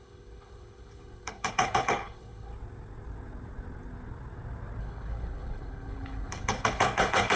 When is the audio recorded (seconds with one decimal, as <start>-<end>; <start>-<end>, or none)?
2.5-4.8